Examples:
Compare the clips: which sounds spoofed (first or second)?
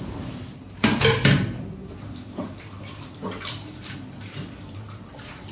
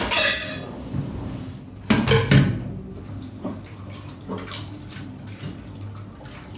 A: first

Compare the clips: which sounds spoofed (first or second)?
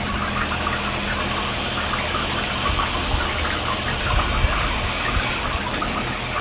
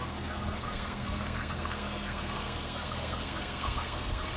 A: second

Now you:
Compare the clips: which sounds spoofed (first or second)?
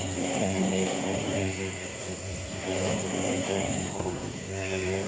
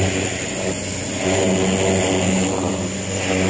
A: first